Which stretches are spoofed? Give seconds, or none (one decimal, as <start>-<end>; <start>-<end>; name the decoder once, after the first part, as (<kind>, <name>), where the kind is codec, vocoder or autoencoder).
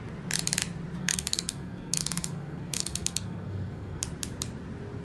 1.0-4.0 (codec, SNAC)